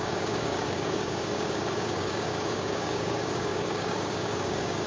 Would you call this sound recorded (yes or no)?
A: no